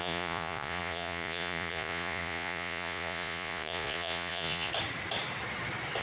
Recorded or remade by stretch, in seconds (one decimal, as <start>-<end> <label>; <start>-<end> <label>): 0.0-4.7 remade; 4.7-6.0 recorded